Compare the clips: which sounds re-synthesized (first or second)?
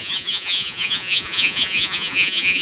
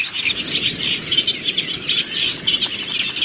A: first